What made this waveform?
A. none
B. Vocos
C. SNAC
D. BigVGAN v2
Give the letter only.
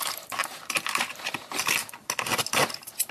A